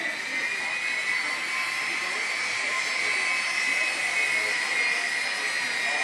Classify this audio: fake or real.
real